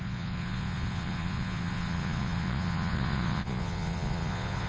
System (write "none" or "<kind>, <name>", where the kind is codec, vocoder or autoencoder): vocoder, Vocos